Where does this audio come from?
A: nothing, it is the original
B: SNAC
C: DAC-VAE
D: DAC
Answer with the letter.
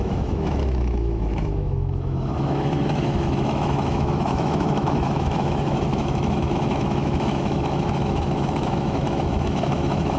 C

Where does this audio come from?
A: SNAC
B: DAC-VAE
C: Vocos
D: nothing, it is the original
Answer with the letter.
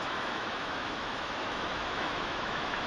B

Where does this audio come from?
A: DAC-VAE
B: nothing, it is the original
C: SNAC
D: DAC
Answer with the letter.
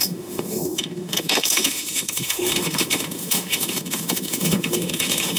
A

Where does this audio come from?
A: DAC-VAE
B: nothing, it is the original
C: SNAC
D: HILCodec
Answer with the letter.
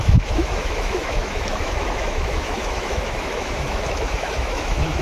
A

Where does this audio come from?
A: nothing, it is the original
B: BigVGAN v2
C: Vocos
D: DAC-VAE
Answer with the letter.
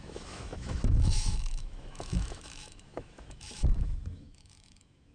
D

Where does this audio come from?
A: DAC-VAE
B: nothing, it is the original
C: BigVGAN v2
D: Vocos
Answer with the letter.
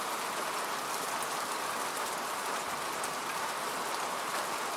B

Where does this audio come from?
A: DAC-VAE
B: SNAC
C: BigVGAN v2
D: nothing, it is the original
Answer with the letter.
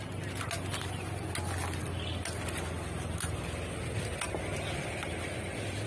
D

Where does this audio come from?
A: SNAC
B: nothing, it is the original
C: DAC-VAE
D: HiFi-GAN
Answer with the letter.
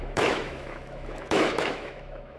C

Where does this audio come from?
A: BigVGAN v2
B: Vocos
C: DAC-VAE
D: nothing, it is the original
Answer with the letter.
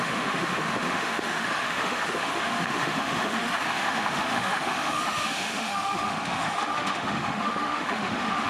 C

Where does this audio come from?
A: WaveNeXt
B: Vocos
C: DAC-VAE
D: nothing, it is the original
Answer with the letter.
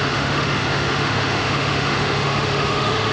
C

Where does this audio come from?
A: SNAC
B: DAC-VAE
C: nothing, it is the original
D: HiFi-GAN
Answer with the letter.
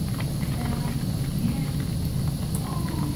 C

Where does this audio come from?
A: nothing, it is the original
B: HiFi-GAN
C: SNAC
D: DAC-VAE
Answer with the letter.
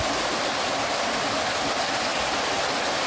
A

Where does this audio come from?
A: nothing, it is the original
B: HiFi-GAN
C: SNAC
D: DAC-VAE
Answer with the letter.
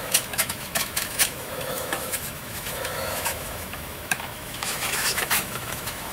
D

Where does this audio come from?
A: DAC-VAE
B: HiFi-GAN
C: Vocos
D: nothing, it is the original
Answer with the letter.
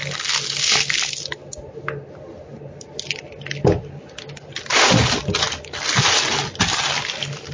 D